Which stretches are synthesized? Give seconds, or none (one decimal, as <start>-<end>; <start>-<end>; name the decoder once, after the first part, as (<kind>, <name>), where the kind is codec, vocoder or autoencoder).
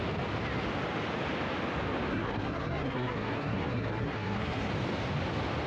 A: 2.1-4.7 (codec, SNAC)